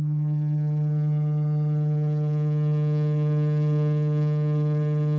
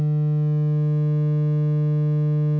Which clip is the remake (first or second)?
first